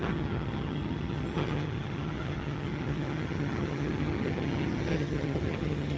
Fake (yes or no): yes